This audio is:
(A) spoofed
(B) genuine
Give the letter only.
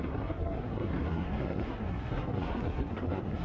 A